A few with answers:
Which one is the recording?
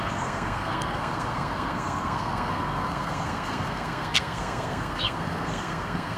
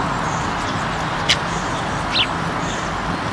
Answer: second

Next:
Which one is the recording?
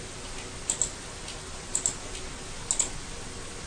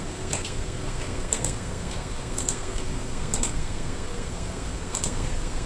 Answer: first